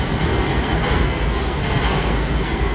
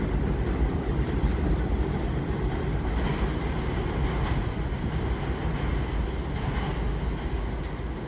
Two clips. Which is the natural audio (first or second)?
second